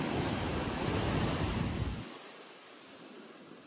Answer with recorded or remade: recorded